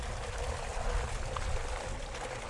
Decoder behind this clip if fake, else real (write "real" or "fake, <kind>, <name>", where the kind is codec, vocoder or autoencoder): real